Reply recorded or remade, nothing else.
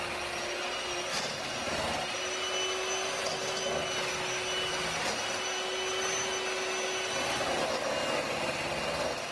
recorded